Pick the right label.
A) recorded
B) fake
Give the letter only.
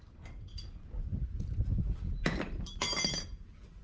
A